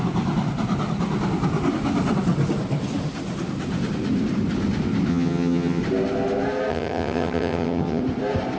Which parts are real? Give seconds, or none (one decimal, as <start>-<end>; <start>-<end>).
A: 0.0-5.1; 5.8-6.7; 8.0-8.6